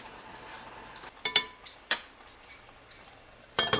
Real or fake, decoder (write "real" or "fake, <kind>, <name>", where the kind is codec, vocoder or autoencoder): fake, vocoder, BigVGAN v2